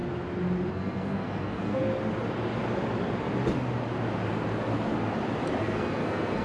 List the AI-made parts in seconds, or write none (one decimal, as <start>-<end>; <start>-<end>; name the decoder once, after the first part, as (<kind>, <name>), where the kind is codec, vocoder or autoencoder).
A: 0.7-1.8 (codec, SNAC); 5.6-6.4